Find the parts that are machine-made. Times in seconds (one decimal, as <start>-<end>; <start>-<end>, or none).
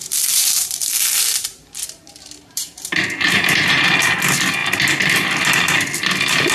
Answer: 0.0-0.9; 1.5-3.9